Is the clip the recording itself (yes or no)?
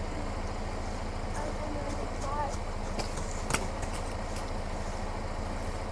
yes